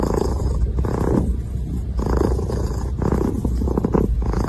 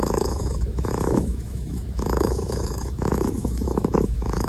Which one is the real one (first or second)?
first